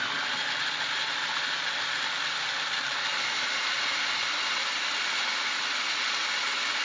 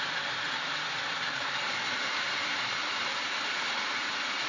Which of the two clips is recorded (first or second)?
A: first